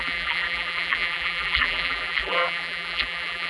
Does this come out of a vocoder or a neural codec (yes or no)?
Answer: yes